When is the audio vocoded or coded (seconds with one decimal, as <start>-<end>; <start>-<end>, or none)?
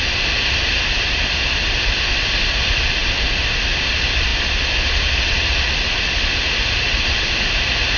none